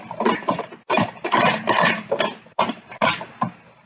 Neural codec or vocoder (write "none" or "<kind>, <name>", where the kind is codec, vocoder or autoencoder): vocoder, BigVGAN v2